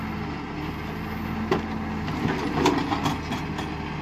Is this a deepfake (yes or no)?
no